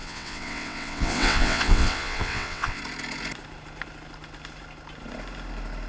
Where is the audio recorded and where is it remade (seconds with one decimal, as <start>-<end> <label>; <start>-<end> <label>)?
0.0-2.8 remade; 2.8-5.9 recorded